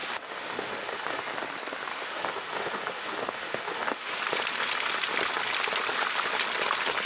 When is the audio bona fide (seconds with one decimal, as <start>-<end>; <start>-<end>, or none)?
1.2-1.9; 4.2-7.1